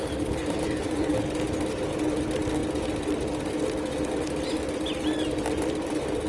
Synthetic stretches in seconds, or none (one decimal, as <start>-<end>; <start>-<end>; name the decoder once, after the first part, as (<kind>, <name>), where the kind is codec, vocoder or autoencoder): 0.4-1.1 (vocoder, BigVGAN v2)